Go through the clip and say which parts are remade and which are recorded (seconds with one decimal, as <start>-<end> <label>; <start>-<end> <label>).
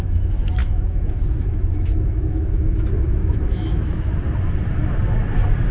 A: 0.0-0.6 recorded; 0.6-4.0 remade; 4.0-5.7 recorded